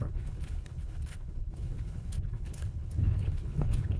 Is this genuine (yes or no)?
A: no